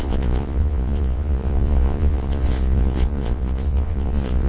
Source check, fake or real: fake